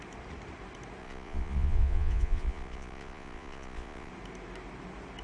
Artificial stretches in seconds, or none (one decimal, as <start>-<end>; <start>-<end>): 1.0-4.1